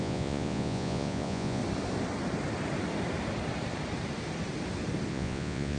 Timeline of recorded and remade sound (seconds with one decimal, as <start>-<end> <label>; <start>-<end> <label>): 0.0-1.6 remade; 1.6-5.1 recorded; 5.1-5.8 remade